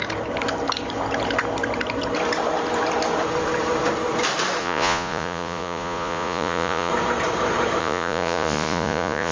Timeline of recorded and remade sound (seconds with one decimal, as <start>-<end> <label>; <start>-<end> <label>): 0.0-4.6 recorded; 4.6-6.9 remade; 6.9-7.8 recorded; 7.8-9.3 remade